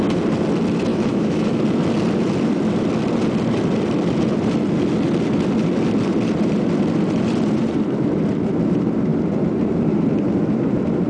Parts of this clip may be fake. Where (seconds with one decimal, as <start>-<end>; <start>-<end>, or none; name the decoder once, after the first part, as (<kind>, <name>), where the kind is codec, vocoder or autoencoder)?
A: 0.9-1.6 (autoencoder, DAC-VAE)